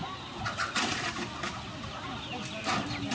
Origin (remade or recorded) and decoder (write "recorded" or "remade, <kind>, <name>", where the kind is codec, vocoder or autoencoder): recorded